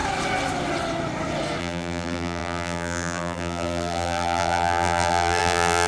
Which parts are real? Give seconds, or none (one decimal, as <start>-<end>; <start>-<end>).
0.0-1.6